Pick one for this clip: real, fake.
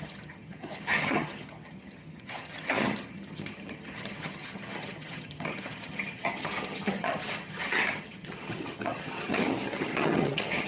fake